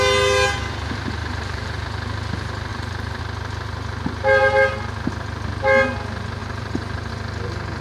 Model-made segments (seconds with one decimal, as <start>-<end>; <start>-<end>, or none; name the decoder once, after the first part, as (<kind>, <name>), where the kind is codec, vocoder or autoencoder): 1.2-1.8 (vocoder, BigVGAN v2); 2.7-3.2; 6.4-7.1